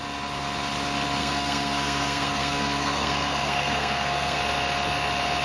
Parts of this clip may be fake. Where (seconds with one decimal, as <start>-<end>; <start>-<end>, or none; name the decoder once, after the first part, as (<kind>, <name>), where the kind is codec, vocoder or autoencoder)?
1.2-4.4 (codec, SNAC)